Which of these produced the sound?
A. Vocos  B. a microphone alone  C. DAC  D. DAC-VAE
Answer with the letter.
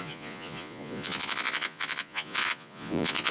A